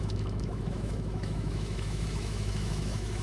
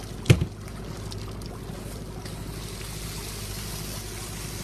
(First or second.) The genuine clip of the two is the second